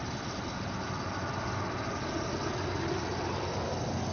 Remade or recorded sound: recorded